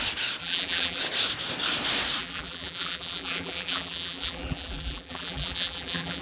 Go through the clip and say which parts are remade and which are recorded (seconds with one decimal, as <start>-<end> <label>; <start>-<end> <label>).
0.0-0.4 recorded; 0.4-1.0 remade; 1.0-2.2 recorded; 2.2-6.2 remade